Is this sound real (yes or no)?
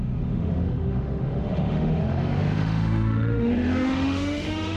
no